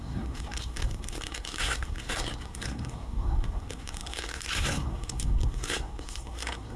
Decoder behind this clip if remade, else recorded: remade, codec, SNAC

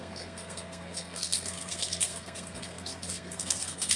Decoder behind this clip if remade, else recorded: remade, codec, SNAC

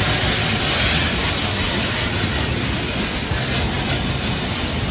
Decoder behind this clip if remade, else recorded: recorded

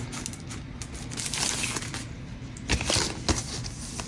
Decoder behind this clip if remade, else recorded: recorded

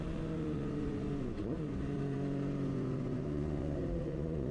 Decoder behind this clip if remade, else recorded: remade, vocoder, Vocos